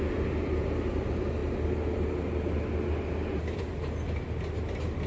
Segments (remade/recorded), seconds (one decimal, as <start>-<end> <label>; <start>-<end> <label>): 0.0-5.1 recorded